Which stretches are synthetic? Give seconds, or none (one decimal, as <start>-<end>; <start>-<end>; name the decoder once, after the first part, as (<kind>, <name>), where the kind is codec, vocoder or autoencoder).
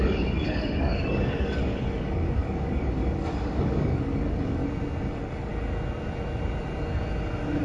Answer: 0.0-4.6 (codec, DAC); 5.1-5.5